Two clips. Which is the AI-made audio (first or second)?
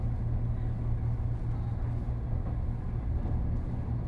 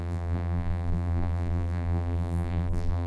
second